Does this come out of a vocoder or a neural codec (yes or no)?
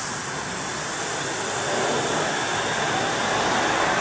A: no